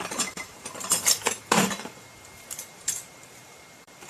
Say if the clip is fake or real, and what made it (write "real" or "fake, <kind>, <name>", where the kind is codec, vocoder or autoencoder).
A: fake, vocoder, BigVGAN v2